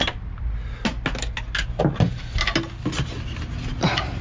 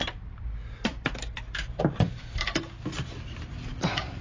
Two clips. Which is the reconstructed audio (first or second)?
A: second